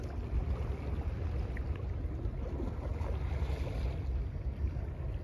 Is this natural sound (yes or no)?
yes